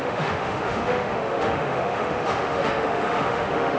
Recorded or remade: remade